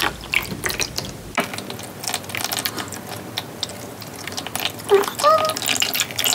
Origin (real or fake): real